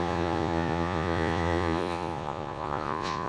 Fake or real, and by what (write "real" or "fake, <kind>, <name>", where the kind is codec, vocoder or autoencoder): fake, vocoder, Vocos